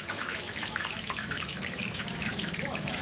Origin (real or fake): fake